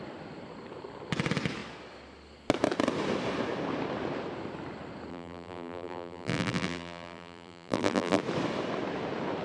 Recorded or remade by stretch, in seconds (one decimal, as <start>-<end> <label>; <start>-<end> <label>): 0.0-5.1 recorded; 5.1-8.2 remade; 8.2-9.4 recorded